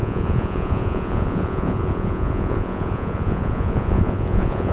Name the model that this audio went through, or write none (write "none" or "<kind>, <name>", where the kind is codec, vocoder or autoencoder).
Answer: vocoder, Vocos